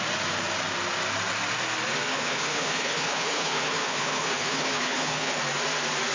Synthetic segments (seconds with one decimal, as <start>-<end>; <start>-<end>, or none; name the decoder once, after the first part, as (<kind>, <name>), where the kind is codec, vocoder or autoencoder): 2.1-5.4 (codec, HILCodec)